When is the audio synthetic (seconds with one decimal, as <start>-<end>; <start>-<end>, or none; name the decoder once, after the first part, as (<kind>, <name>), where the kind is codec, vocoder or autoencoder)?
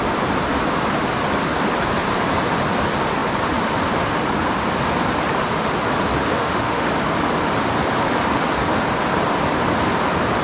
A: 6.4-6.9 (autoencoder, DAC-VAE)